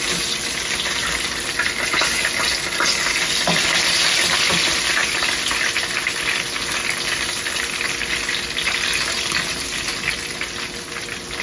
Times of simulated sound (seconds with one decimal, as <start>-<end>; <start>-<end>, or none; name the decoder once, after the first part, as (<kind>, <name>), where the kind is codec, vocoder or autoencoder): none